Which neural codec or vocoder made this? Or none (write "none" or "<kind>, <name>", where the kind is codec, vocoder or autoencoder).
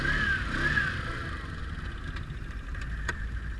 none